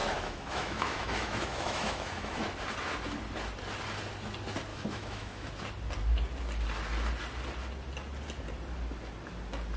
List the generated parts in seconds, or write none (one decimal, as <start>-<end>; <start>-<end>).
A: 0.0-2.4; 4.7-5.5